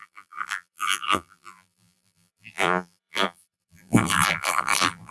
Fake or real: fake